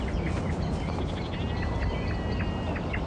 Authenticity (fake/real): real